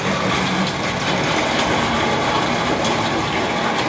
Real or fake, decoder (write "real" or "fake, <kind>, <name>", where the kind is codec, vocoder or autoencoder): real